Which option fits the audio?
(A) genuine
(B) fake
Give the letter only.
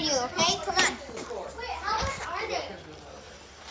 A